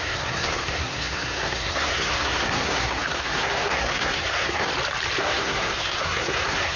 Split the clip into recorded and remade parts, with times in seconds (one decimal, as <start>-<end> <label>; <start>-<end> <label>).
0.0-4.7 remade; 4.7-5.2 recorded; 5.2-6.8 remade